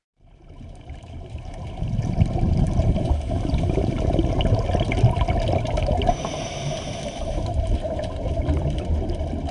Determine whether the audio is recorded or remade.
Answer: recorded